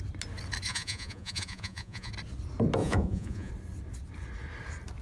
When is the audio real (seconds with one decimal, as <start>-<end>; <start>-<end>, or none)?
0.0-0.7; 2.1-2.8; 3.5-5.0